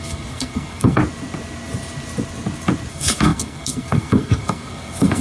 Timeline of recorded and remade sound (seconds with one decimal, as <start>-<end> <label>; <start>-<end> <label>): 0.0-1.0 remade; 1.0-2.9 recorded; 2.9-5.2 remade